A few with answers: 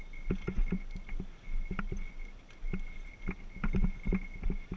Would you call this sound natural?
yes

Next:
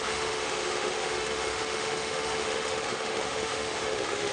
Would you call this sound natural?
no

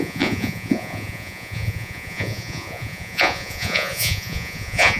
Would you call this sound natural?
no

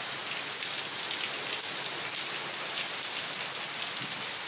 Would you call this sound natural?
yes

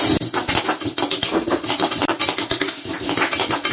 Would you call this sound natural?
yes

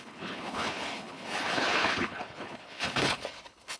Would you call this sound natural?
no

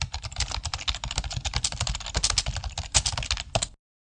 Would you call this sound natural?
yes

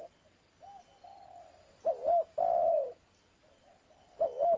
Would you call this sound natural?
yes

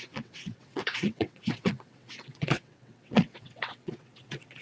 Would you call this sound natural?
no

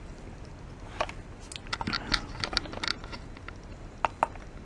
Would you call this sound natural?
yes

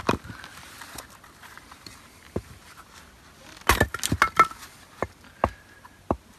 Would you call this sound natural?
yes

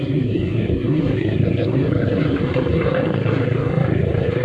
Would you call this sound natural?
no